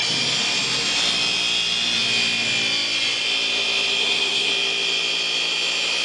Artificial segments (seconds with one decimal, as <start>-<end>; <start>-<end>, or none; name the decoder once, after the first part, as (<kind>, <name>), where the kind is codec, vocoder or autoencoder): 4.0-4.5 (codec, SNAC)